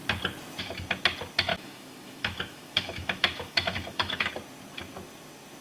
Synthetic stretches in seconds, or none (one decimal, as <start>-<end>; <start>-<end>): 1.5-4.3